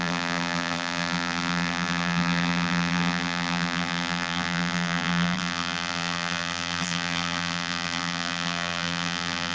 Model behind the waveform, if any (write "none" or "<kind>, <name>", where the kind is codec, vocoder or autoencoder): vocoder, BigVGAN v2